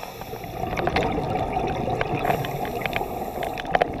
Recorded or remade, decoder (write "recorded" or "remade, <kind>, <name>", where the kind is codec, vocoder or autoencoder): recorded